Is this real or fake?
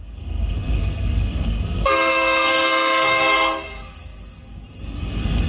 fake